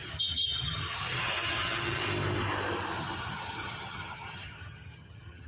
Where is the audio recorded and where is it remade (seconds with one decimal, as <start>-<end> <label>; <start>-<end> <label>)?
0.0-2.0 remade; 2.0-3.0 recorded; 3.0-5.5 remade

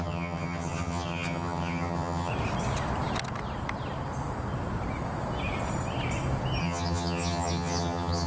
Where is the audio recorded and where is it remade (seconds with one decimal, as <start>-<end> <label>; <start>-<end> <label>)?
0.0-2.3 remade; 2.3-6.6 recorded; 6.6-8.3 remade

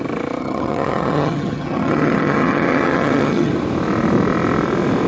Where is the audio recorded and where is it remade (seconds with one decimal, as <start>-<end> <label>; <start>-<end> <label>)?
0.0-0.4 recorded; 0.4-3.5 remade; 3.5-5.1 recorded

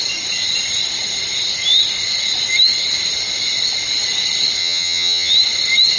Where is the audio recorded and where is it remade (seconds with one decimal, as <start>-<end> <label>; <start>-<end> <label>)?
0.0-4.6 recorded; 4.6-5.3 remade; 5.3-6.0 recorded

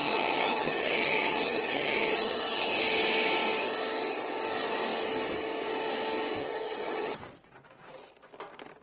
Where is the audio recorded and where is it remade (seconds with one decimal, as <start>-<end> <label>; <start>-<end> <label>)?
0.0-2.7 remade; 2.7-6.4 recorded; 6.4-7.2 remade; 7.2-8.8 recorded